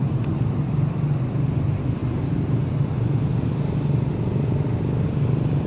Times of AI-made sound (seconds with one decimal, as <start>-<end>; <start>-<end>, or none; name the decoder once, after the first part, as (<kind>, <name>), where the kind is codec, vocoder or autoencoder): none